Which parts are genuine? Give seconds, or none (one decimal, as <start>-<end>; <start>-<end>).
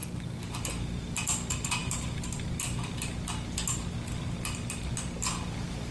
0.7-5.9